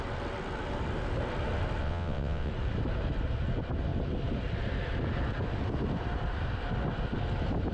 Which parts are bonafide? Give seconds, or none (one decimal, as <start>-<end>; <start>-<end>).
0.0-1.8; 2.5-7.7